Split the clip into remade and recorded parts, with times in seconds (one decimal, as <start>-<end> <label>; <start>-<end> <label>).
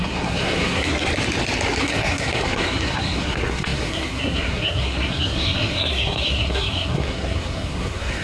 0.0-1.1 remade; 1.1-1.8 recorded; 1.8-8.2 remade